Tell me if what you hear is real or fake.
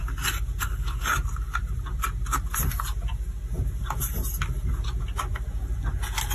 real